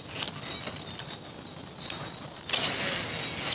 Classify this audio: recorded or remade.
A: recorded